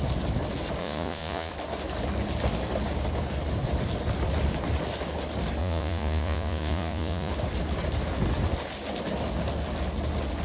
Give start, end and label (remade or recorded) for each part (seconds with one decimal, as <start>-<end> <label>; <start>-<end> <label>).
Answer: 0.0-0.8 recorded; 0.8-1.5 remade; 1.5-5.6 recorded; 5.6-7.3 remade; 7.3-10.4 recorded